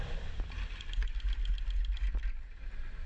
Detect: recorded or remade recorded